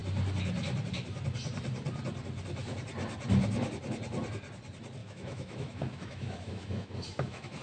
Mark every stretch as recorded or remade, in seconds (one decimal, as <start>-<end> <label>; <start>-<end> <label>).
0.0-5.0 recorded; 5.0-7.6 remade